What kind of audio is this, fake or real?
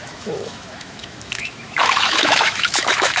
fake